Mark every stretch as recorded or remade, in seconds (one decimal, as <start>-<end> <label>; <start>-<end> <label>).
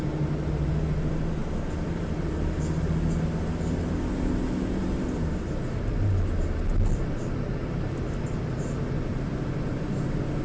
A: 0.0-10.4 recorded